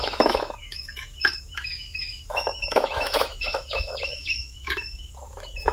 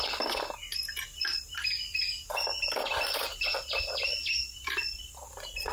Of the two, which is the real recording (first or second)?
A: second